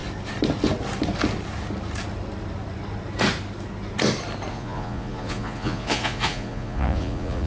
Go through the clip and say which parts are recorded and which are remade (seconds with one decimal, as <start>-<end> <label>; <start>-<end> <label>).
0.0-4.5 recorded; 4.5-7.5 remade